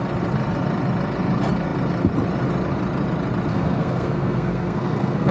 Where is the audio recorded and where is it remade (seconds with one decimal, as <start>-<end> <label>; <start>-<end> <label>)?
0.0-3.5 recorded; 3.5-5.3 remade